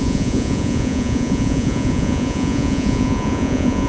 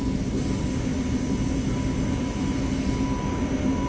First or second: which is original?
second